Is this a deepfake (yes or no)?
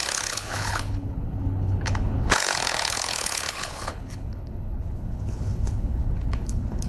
yes